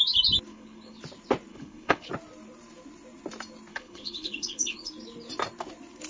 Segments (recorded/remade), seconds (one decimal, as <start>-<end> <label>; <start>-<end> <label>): 0.0-0.5 recorded; 0.5-1.0 remade; 1.0-1.5 recorded; 1.5-2.1 remade; 2.1-3.7 recorded; 3.7-4.9 remade; 4.9-6.1 recorded